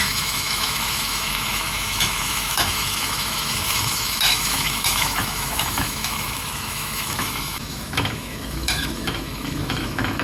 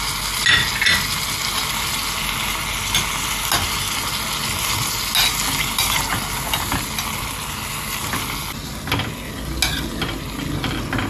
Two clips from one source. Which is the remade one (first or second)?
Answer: first